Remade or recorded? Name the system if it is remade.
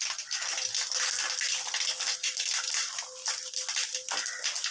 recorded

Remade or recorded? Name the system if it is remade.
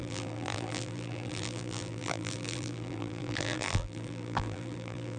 remade, vocoder, BigVGAN v2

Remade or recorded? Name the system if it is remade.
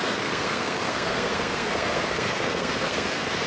remade, codec, SNAC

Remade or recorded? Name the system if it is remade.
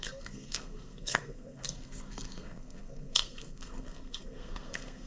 remade, codec, SNAC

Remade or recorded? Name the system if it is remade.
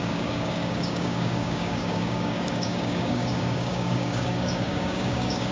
remade, codec, DAC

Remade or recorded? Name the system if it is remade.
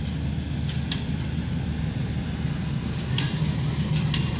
recorded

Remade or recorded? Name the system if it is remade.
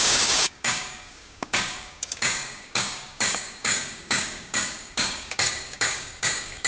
remade, codec, DAC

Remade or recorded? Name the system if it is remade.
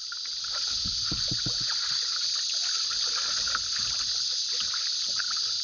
recorded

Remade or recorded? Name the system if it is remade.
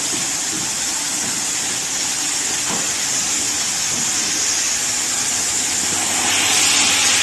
recorded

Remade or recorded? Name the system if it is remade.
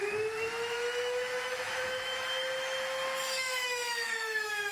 remade, autoencoder, DAC-VAE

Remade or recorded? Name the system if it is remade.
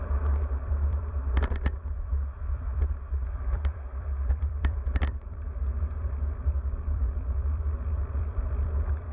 remade, vocoder, BigVGAN v2